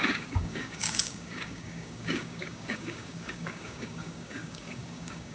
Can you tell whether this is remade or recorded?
remade